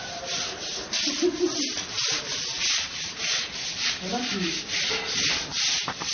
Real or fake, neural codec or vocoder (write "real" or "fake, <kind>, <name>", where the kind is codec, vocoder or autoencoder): real